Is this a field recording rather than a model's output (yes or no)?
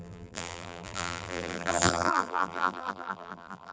no